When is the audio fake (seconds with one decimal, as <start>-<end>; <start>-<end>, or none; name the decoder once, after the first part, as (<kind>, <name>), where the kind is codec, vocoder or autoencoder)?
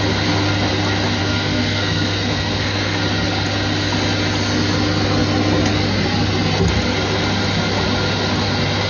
1.2-3.0 (codec, SNAC)